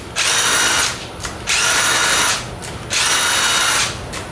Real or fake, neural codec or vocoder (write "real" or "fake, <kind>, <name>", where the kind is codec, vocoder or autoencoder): real